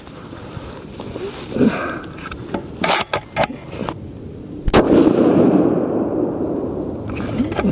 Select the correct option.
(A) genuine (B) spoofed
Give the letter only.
A